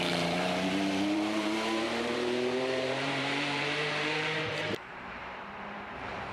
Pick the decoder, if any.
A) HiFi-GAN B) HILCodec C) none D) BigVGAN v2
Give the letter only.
D